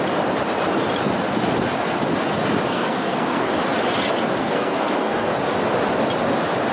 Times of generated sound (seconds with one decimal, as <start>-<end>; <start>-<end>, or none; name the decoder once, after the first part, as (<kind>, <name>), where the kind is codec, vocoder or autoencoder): 2.7-3.5 (codec, SNAC); 4.4-5.3